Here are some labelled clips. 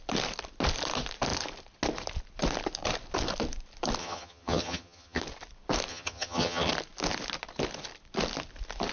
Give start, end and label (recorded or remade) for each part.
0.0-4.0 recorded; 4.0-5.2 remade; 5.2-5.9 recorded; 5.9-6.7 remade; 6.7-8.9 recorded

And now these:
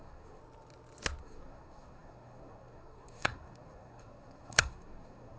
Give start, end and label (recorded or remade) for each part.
0.0-0.4 remade; 0.4-1.2 recorded; 1.2-5.4 remade

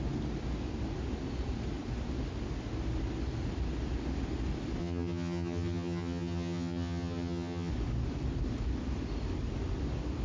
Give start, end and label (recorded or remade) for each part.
0.0-4.8 recorded; 4.8-7.7 remade; 7.7-10.2 recorded

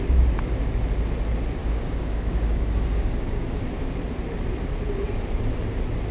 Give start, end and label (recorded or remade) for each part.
0.0-1.6 recorded; 1.6-3.6 remade; 3.6-6.1 recorded

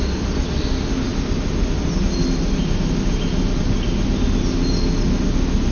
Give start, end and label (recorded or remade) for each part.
0.0-5.7 recorded

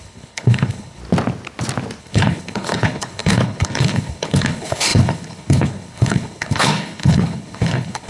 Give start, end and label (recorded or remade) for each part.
0.0-1.0 remade; 1.0-2.0 recorded; 2.0-8.1 remade

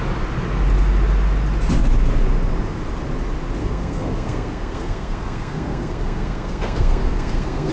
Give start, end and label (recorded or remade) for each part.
0.0-3.6 recorded; 3.6-7.7 remade

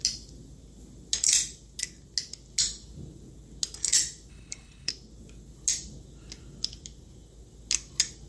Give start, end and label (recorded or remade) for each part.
0.0-4.3 recorded; 4.3-4.9 remade; 4.9-8.3 recorded